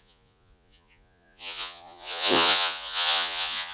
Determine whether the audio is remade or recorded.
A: remade